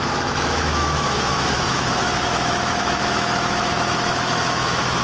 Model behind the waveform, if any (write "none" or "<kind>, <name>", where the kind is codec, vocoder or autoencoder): autoencoder, DAC-VAE